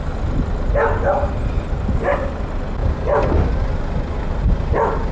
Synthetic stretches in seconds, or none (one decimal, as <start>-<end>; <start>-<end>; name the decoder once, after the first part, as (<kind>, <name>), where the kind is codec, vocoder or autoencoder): none